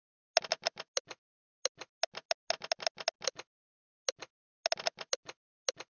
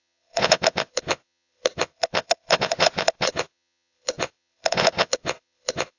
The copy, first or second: second